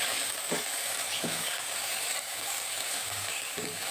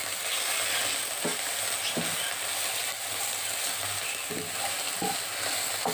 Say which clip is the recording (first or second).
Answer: second